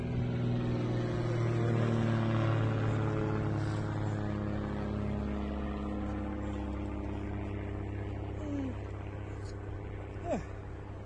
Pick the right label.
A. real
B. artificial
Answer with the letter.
A